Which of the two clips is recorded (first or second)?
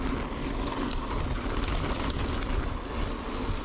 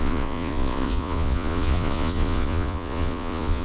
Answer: first